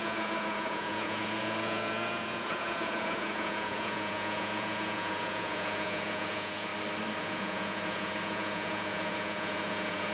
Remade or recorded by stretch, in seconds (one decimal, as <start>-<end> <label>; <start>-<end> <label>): 0.0-6.7 remade; 6.7-7.2 recorded; 7.2-10.1 remade